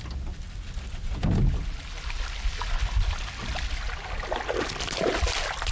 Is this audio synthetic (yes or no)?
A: no